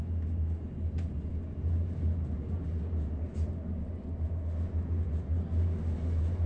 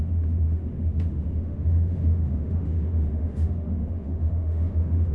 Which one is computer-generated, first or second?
second